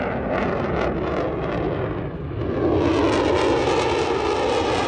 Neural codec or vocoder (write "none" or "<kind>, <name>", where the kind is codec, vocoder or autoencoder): none